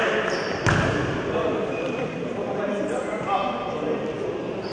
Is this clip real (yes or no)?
yes